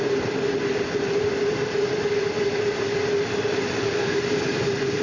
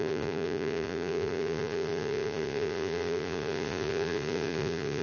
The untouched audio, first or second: first